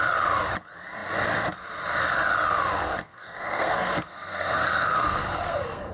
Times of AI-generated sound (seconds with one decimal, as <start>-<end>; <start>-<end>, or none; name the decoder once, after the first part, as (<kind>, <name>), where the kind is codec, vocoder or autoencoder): 3.0-5.9 (codec, SNAC)